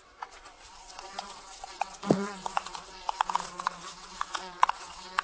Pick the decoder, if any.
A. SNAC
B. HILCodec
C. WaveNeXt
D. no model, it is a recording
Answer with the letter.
C